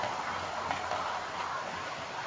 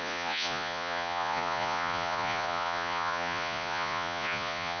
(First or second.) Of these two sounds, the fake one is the second